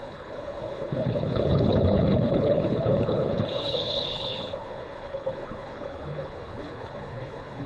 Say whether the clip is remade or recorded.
remade